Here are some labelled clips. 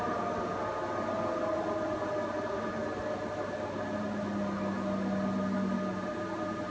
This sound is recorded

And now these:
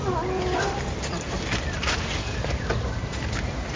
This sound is remade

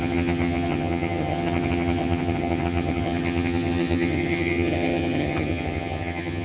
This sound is remade